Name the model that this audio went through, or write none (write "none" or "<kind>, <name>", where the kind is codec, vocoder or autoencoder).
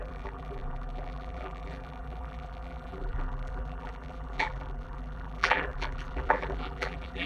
vocoder, BigVGAN v2